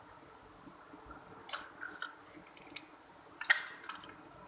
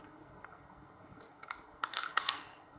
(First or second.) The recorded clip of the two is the first